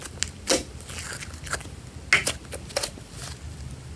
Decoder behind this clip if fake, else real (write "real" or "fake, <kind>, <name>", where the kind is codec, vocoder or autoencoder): real